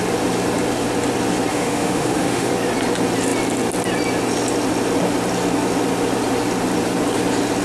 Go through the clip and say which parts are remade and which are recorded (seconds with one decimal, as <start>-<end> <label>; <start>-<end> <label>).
0.0-1.5 recorded; 1.5-2.5 remade; 2.5-7.6 recorded

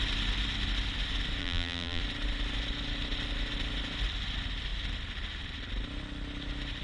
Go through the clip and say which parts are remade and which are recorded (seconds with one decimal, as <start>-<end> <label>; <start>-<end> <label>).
0.0-1.4 recorded; 1.4-2.0 remade; 2.0-6.8 recorded